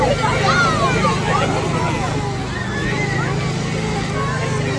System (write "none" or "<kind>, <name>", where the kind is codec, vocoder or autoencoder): none